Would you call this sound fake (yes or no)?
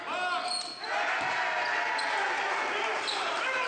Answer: no